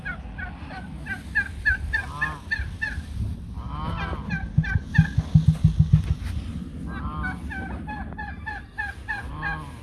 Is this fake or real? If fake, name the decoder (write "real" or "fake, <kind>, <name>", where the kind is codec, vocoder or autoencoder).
real